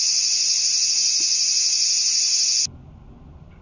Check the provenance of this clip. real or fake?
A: real